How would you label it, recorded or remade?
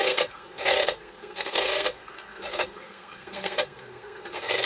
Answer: remade